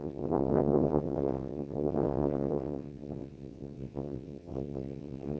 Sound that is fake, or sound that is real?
fake